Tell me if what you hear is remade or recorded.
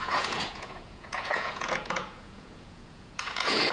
remade